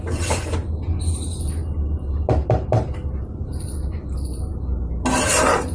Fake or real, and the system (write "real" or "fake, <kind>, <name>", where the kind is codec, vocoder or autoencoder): real